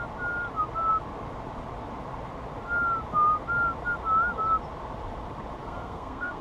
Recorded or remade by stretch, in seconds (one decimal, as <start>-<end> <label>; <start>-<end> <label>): 0.0-5.6 recorded; 5.6-6.4 remade